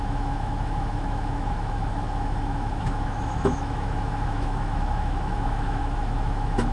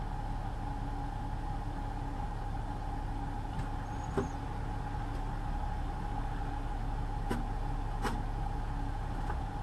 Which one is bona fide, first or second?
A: second